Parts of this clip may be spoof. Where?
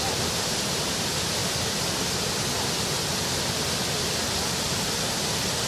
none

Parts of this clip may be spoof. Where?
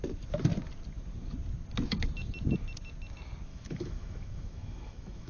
3.5-5.3 (autoencoder, DAC-VAE)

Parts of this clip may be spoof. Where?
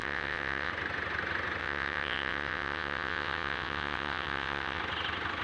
0.0-0.7 (vocoder, WaveNeXt); 1.6-4.8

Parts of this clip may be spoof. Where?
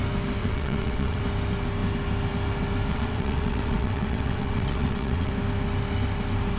0.4-1.2 (vocoder, WaveNeXt); 2.9-5.3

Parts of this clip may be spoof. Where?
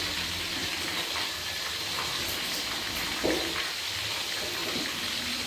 none